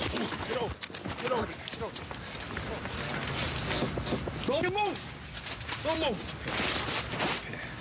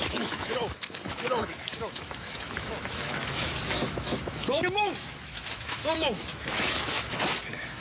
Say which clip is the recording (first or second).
first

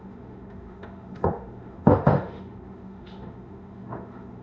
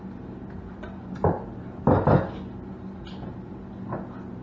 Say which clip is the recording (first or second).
second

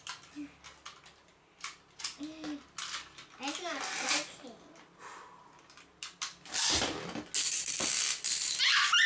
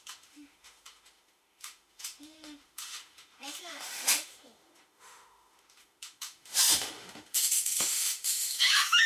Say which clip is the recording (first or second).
first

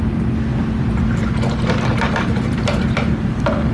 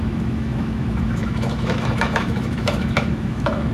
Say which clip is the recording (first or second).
first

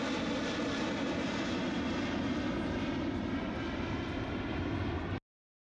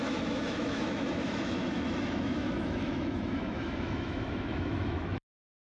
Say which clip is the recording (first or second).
first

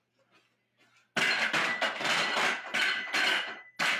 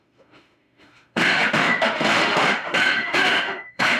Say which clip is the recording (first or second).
first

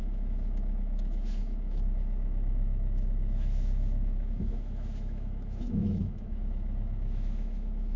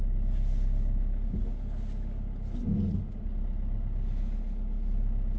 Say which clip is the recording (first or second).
second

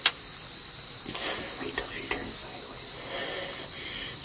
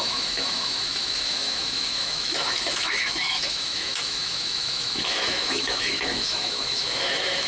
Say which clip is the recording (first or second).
first